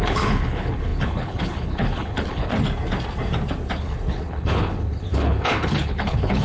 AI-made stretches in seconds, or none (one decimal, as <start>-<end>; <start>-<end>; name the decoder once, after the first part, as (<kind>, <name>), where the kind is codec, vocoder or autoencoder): 0.0-2.5 (codec, HILCodec); 3.8-6.4